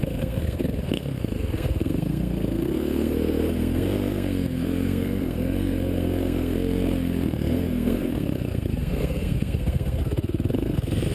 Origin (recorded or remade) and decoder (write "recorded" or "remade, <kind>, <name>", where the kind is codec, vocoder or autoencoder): remade, codec, SNAC